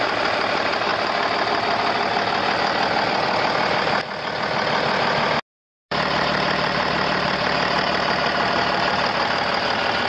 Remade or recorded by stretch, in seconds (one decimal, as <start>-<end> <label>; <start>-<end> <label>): 0.0-0.9 remade; 0.9-5.9 recorded; 5.9-10.1 remade